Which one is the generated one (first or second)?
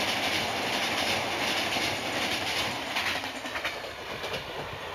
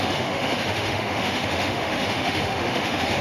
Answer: second